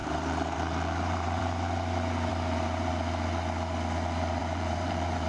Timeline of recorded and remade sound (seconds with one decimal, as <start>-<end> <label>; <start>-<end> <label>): 0.0-1.4 remade; 1.4-2.3 recorded; 2.3-2.9 remade; 2.9-4.4 recorded; 4.4-5.3 remade